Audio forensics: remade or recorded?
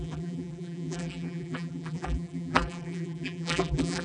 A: remade